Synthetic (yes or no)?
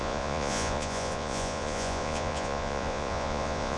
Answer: yes